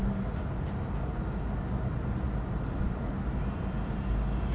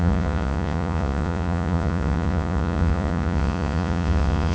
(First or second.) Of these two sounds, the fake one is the second